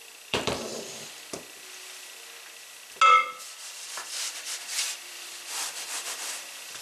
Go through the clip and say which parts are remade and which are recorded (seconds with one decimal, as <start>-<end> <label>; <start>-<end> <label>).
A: 0.0-0.7 remade; 0.7-4.6 recorded; 4.6-6.8 remade